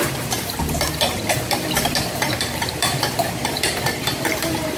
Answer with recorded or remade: remade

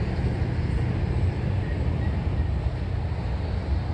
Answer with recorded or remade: recorded